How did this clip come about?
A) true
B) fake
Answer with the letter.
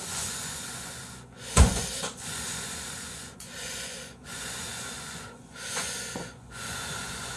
B